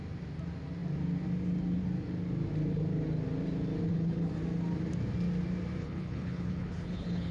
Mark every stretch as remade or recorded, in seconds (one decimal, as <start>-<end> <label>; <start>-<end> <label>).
0.0-3.9 recorded; 3.9-4.4 remade; 4.4-5.8 recorded; 5.8-7.3 remade